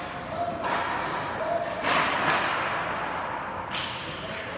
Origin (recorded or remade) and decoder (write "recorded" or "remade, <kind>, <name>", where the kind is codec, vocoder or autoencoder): recorded